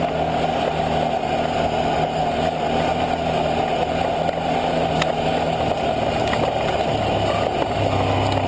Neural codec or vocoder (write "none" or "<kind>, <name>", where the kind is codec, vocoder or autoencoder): none